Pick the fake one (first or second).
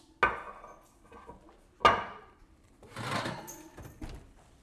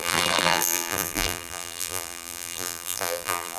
second